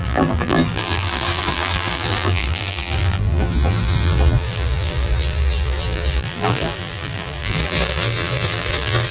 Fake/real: fake